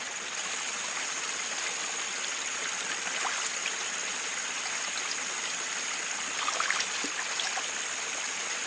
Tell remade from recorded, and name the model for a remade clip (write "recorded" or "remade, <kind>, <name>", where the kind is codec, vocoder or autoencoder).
recorded